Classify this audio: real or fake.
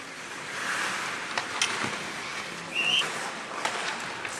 real